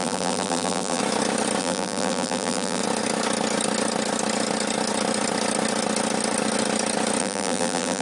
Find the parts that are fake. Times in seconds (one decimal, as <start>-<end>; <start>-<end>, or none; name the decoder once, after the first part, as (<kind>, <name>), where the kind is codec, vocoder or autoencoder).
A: 0.0-1.0 (vocoder, BigVGAN v2); 1.6-2.8; 7.2-8.0